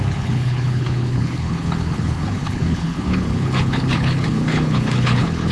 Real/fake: fake